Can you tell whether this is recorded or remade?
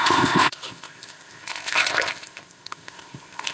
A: remade